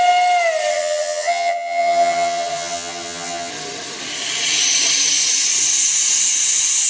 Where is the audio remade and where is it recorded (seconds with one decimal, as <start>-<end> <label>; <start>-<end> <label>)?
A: 0.0-0.7 recorded; 0.7-3.5 remade; 3.5-6.9 recorded